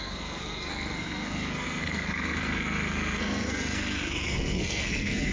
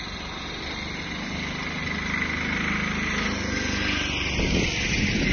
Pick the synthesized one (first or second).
first